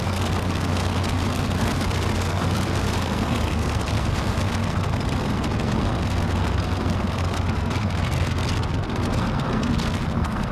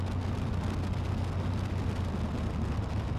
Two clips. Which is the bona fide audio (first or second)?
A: second